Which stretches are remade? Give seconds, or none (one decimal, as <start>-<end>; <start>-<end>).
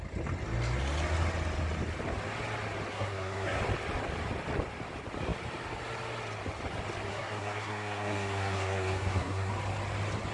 2.9-3.6; 7.1-9.5